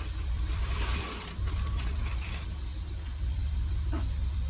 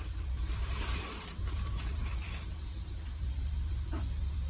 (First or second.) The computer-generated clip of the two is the second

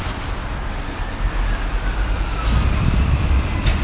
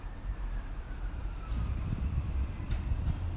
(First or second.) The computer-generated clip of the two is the second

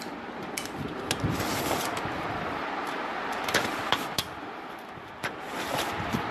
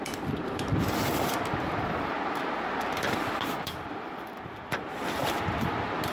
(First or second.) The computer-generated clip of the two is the second